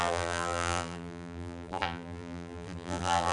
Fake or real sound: fake